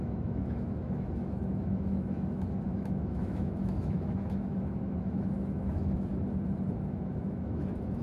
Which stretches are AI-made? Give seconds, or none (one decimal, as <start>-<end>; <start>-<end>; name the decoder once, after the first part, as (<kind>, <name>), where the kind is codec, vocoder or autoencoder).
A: 0.0-6.1 (autoencoder, DAC-VAE); 6.9-8.0